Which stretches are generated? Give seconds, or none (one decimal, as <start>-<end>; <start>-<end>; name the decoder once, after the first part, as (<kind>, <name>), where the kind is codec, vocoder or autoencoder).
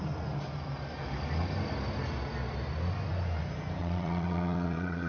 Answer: 3.8-5.1 (vocoder, Vocos)